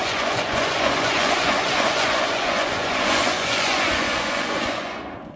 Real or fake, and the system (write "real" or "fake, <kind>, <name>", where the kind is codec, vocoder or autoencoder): fake, vocoder, Vocos